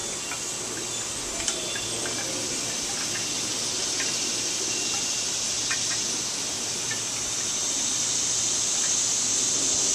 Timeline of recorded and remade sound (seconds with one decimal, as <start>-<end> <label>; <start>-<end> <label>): 0.0-9.9 recorded